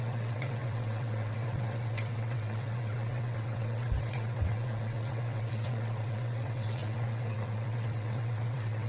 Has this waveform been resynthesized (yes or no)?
yes